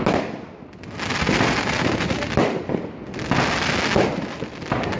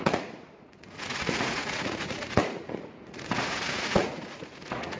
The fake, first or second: second